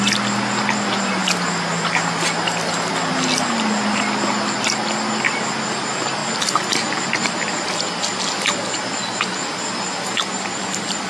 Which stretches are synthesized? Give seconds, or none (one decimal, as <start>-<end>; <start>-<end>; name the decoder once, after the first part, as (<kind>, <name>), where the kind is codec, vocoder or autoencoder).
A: none